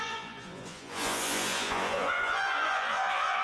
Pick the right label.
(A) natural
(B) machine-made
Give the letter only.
B